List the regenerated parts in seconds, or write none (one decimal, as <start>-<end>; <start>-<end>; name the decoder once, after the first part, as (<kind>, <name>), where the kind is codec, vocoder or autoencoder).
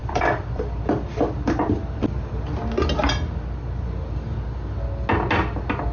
0.0-2.5 (vocoder, BigVGAN v2)